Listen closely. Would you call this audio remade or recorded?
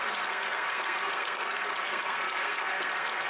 remade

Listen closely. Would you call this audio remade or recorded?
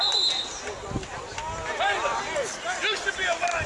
recorded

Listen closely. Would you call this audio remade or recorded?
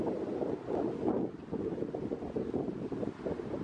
recorded